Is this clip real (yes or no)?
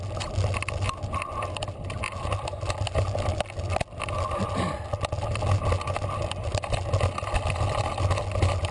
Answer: yes